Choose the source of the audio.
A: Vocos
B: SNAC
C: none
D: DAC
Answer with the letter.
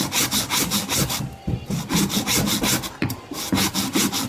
C